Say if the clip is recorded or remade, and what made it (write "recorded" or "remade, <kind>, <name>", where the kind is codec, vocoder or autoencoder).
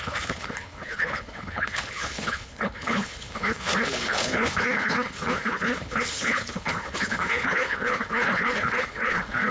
remade, codec, HILCodec